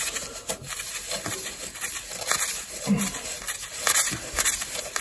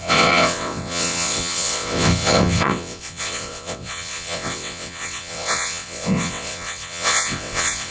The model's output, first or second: second